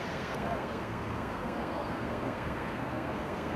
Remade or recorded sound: remade